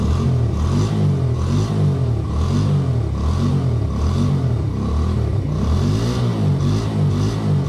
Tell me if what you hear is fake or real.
real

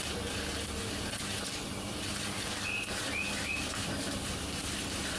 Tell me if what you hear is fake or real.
real